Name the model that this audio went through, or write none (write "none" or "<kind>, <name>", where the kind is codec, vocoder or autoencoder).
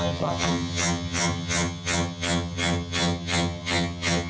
vocoder, HiFi-GAN